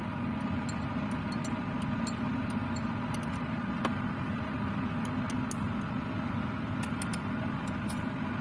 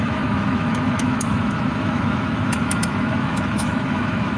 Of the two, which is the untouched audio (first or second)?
first